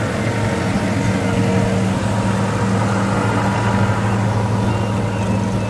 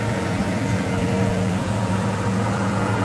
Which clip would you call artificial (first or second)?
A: second